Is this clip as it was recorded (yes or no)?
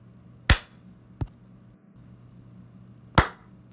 yes